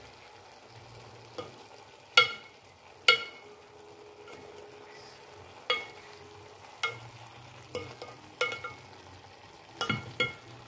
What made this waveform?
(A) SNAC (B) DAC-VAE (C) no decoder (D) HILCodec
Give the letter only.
C